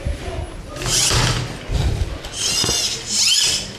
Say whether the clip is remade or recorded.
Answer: recorded